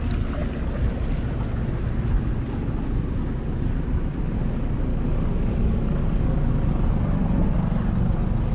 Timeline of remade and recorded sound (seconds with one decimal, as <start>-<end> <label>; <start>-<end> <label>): 0.0-4.9 recorded; 4.9-6.5 remade; 6.5-8.5 recorded

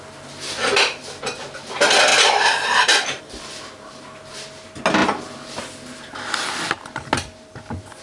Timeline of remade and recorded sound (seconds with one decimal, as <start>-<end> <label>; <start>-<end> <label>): 0.0-2.1 recorded; 2.1-3.2 remade; 3.2-8.0 recorded